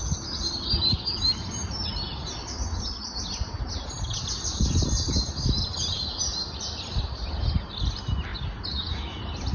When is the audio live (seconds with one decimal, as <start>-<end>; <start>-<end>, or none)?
0.0-9.5